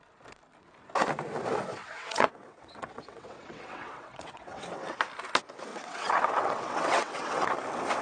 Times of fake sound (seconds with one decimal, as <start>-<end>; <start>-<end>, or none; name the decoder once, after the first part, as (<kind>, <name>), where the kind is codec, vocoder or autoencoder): 1.7-5.0 (vocoder, WaveNeXt); 5.7-7.5